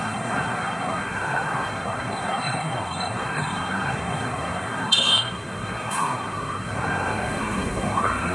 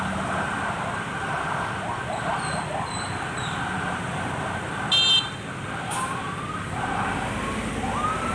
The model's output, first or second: first